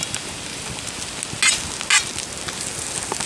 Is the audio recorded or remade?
recorded